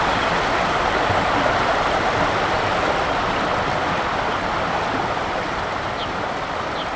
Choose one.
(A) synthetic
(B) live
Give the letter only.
B